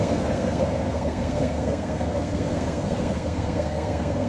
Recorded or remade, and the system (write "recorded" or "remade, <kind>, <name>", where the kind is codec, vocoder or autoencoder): remade, codec, SNAC